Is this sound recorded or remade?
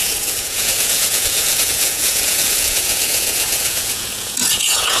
remade